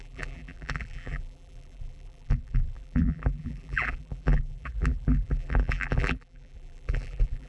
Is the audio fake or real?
fake